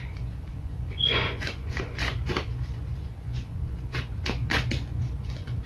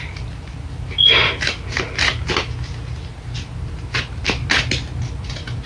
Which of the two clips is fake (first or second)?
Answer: first